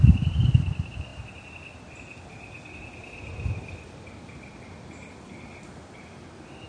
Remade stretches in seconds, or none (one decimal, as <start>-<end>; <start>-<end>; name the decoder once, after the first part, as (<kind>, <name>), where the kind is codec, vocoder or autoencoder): none